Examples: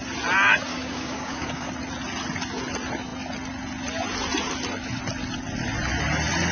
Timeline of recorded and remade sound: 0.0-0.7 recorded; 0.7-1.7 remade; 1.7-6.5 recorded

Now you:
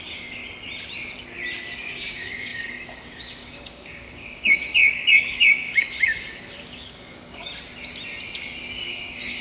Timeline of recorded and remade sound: 0.0-0.4 remade; 0.4-1.8 recorded; 1.8-7.5 remade; 7.5-8.8 recorded; 8.8-9.4 remade

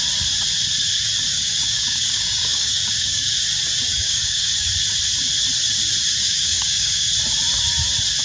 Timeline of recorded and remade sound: 0.0-1.3 recorded; 1.3-3.3 remade; 3.3-3.9 recorded; 3.9-4.7 remade; 4.7-6.2 recorded; 6.2-7.1 remade; 7.1-8.2 recorded